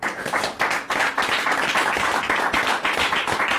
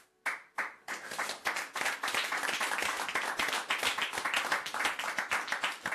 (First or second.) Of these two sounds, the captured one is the second